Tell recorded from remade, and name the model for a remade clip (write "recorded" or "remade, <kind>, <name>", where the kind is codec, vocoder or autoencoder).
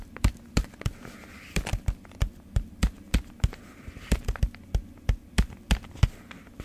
recorded